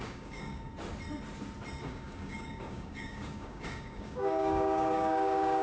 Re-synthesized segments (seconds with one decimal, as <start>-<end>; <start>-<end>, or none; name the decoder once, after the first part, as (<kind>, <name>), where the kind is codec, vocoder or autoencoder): 0.0-0.7 (codec, DAC); 1.8-5.6